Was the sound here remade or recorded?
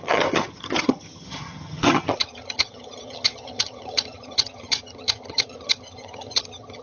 remade